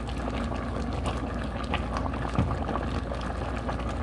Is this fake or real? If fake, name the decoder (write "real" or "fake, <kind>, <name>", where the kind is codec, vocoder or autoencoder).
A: real